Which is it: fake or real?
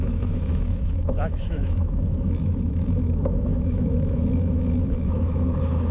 fake